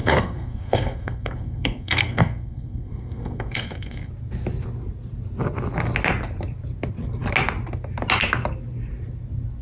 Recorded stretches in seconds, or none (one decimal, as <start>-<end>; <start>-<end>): 4.1-9.6